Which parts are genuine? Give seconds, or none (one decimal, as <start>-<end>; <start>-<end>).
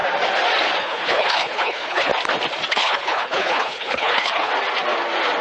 0.0-0.8; 2.1-2.7; 4.5-5.4